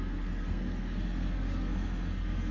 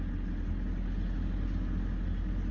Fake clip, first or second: first